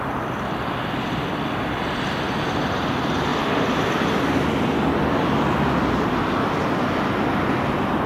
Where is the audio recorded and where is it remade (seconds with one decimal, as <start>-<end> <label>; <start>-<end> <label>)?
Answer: 0.0-8.1 recorded